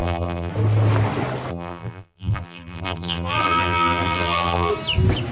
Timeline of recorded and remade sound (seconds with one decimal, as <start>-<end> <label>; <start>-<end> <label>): 0.0-0.5 remade; 0.5-1.5 recorded; 1.5-4.7 remade; 4.7-5.3 recorded